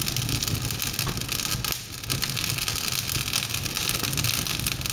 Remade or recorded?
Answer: recorded